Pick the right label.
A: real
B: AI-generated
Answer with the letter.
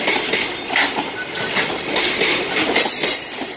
A